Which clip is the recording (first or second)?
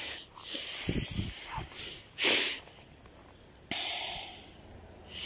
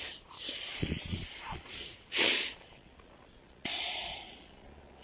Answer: first